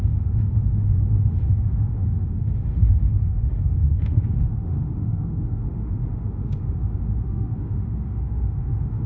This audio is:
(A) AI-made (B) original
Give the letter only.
A